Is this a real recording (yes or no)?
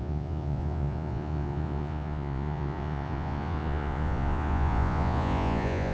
no